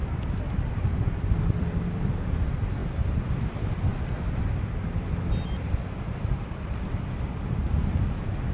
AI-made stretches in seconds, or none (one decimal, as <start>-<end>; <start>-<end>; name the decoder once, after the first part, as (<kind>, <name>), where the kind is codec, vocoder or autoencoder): 0.0-2.8 (vocoder, BigVGAN v2); 3.4-8.5